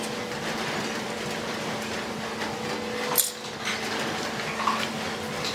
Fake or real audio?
real